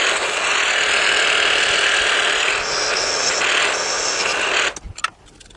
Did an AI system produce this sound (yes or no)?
no